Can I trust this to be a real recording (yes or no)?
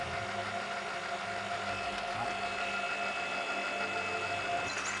yes